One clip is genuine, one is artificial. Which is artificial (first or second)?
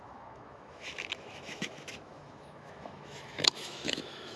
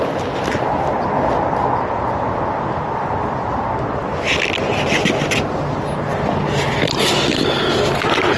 first